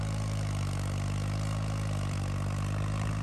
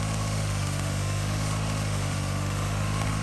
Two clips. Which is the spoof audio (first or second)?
second